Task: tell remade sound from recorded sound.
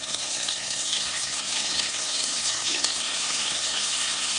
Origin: remade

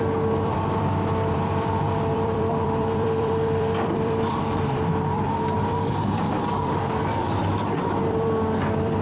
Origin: remade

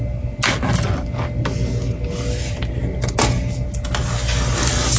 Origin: recorded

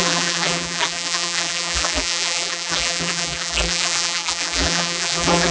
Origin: remade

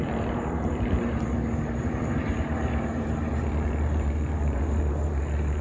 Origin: remade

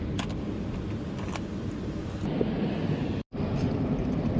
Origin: recorded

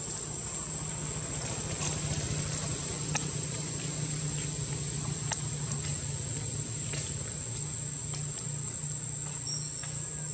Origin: recorded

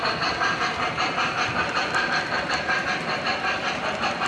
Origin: recorded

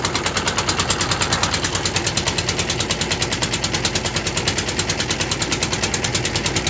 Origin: recorded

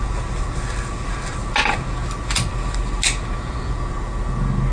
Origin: recorded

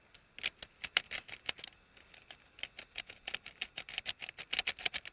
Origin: recorded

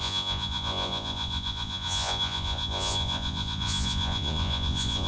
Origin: remade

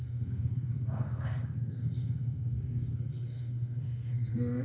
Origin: remade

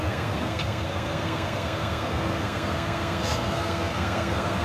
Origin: remade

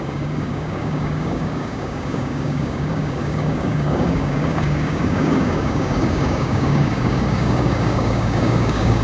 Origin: remade